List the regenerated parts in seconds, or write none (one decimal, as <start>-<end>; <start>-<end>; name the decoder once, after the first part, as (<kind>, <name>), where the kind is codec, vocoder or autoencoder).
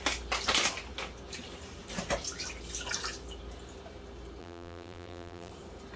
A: 4.4-5.5 (vocoder, BigVGAN v2)